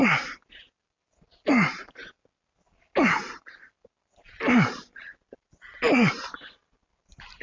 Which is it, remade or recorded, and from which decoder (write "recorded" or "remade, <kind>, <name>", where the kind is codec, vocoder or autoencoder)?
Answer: recorded